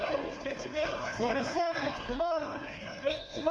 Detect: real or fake fake